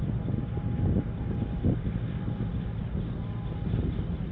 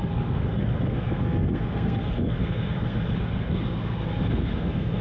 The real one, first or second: first